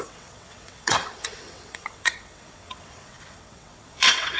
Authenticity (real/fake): fake